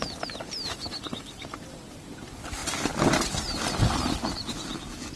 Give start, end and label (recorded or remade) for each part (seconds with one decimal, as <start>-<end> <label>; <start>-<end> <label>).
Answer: 0.0-5.2 recorded